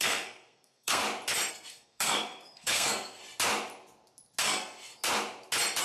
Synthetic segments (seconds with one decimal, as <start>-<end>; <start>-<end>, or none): 0.0-1.0; 1.5-3.2; 4.4-4.9